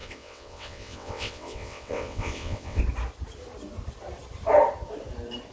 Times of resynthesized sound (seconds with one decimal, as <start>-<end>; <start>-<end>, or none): 0.0-2.8